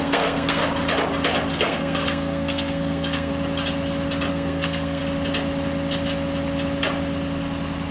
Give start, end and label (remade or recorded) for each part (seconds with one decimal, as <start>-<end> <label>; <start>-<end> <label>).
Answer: 0.0-0.6 remade; 0.6-1.5 recorded; 1.5-3.3 remade; 3.3-4.3 recorded; 4.3-5.0 remade; 5.0-7.9 recorded